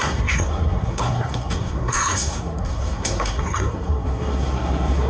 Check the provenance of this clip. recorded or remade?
remade